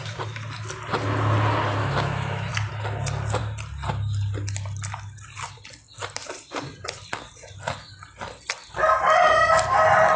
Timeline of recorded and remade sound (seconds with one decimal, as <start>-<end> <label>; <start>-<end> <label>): 0.0-1.8 recorded; 1.8-2.5 remade; 2.5-10.2 recorded